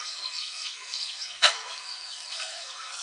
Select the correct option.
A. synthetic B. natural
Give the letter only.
A